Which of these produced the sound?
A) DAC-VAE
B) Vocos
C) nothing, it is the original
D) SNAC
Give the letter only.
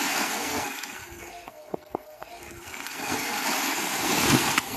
D